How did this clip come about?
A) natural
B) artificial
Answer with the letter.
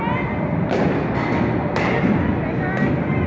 A